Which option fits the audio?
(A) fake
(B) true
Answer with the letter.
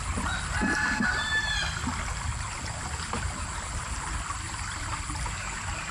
B